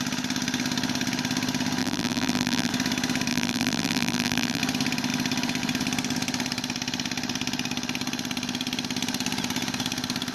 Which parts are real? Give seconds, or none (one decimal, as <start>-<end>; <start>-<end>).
0.0-1.8; 2.7-3.3; 4.6-10.3